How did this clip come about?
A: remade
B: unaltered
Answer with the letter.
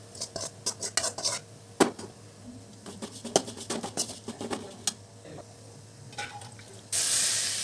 B